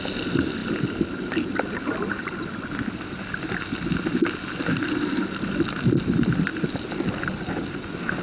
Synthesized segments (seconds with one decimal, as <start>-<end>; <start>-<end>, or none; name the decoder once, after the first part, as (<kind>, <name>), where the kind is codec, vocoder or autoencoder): none